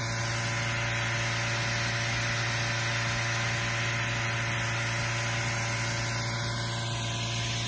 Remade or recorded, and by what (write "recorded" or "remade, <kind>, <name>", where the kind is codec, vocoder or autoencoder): recorded